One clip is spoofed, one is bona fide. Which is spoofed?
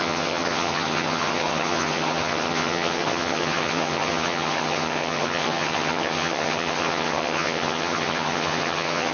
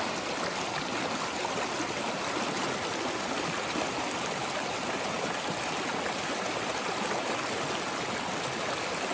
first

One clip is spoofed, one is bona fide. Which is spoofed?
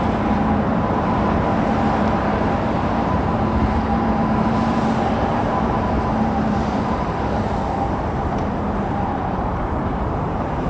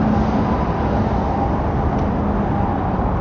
first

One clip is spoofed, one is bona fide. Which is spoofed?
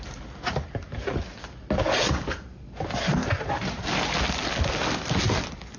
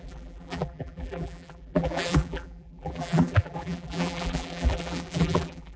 second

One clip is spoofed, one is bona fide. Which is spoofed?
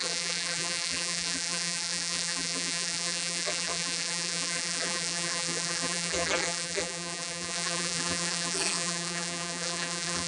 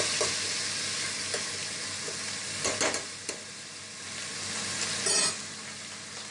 first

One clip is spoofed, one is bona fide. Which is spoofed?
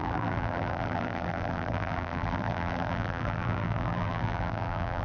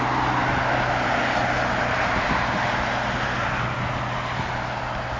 first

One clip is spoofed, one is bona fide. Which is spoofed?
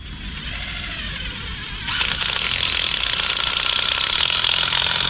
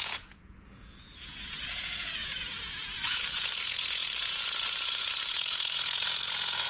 second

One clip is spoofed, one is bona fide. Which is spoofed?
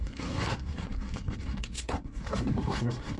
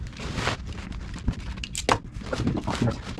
first